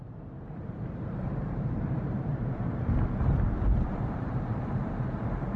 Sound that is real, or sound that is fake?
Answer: fake